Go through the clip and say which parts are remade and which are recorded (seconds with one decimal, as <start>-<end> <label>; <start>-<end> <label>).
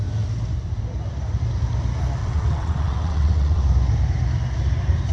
0.0-2.2 recorded; 2.2-3.6 remade; 3.6-5.1 recorded